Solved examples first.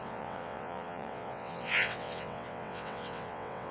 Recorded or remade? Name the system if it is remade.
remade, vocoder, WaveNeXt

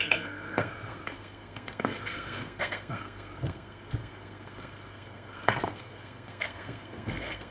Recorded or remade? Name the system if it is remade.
remade, codec, SNAC